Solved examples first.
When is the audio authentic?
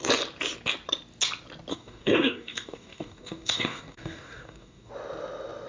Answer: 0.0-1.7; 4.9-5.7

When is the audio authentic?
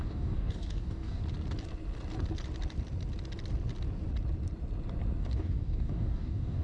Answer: 1.2-5.2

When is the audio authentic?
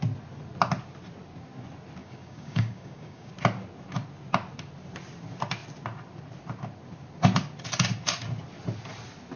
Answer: 0.0-2.0; 3.3-9.4